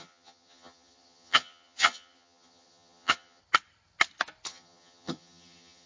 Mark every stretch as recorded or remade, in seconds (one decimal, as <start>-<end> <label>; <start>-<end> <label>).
0.0-3.4 remade; 3.4-4.5 recorded; 4.5-5.9 remade